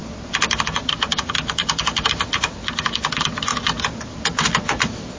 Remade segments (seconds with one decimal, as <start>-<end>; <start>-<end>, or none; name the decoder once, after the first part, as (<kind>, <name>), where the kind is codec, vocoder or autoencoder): none